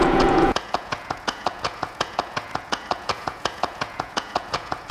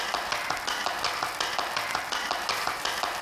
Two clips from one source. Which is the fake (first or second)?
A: first